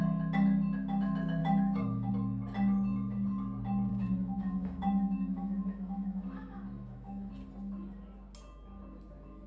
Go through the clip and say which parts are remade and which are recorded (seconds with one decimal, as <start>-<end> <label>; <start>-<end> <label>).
0.0-1.4 recorded; 1.4-2.1 remade; 2.1-3.9 recorded; 3.9-7.3 remade; 7.3-9.5 recorded